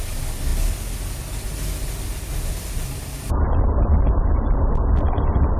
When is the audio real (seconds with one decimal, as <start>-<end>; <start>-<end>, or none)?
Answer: 0.0-5.6